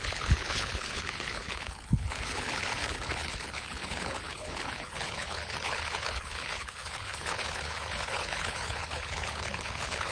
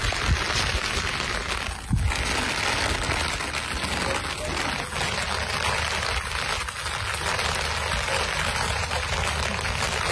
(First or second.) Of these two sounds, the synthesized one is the first